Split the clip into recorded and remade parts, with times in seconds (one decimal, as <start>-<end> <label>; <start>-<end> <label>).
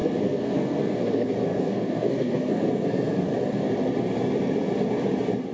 0.0-3.3 remade; 3.3-5.5 recorded